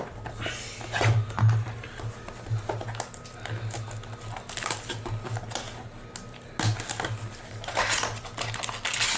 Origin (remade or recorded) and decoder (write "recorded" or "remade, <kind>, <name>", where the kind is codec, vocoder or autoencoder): recorded